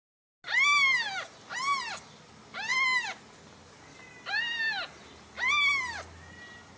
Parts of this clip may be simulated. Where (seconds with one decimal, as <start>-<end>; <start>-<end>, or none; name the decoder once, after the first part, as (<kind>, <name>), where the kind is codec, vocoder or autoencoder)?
none